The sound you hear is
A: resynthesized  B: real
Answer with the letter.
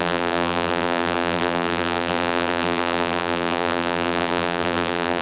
A